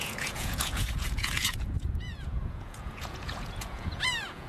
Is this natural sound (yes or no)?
no